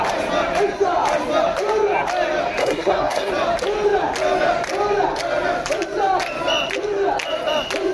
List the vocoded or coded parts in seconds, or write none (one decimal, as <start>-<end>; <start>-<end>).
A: 2.6-3.3